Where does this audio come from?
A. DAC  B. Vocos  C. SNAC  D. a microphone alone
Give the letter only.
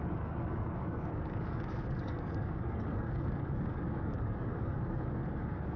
A